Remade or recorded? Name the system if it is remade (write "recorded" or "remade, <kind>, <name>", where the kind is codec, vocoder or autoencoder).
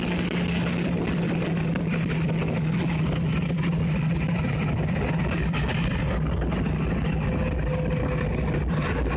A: recorded